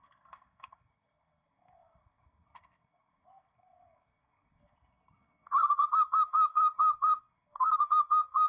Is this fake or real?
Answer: fake